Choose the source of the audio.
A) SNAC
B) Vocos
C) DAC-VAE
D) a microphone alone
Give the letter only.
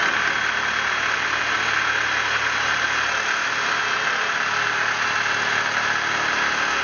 D